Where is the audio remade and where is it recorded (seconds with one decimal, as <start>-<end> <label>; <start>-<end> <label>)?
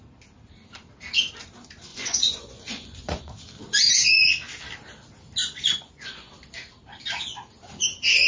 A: 0.0-1.9 recorded; 1.9-3.4 remade; 3.4-5.4 recorded; 5.4-6.3 remade; 6.3-8.3 recorded